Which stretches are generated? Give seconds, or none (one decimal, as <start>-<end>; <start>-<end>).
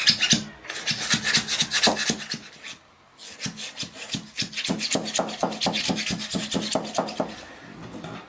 none